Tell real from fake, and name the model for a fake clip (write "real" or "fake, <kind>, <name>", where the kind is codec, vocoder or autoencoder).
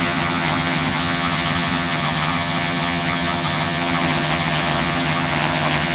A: fake, vocoder, HiFi-GAN